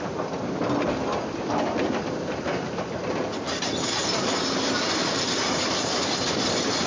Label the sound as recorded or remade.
recorded